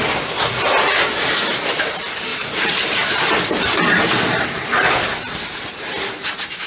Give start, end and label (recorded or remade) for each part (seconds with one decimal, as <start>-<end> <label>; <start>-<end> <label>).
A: 0.0-2.3 recorded; 2.3-3.3 remade; 3.3-6.7 recorded